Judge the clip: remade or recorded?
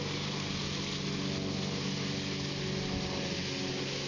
recorded